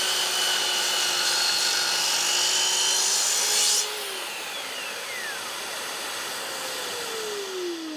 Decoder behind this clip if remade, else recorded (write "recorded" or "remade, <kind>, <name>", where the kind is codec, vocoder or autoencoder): recorded